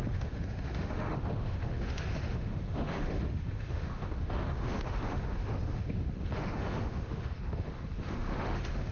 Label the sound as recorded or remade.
remade